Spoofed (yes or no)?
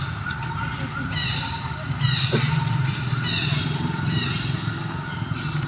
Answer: no